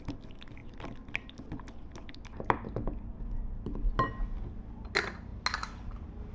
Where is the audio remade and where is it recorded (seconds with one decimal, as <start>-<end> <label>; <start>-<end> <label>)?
0.0-6.3 recorded